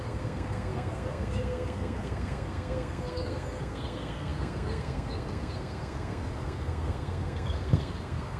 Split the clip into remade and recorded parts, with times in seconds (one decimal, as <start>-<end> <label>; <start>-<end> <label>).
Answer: 0.0-8.4 remade